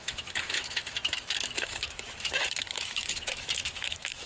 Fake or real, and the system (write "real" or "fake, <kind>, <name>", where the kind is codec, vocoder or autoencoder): fake, autoencoder, DAC-VAE